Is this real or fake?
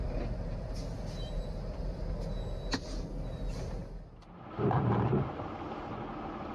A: real